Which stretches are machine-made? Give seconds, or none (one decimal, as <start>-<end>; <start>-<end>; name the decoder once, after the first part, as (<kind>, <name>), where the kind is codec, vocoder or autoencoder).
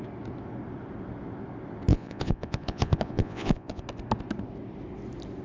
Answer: 1.9-3.8 (vocoder, Vocos)